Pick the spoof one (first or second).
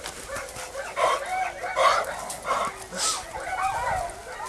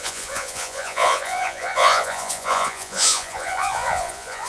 second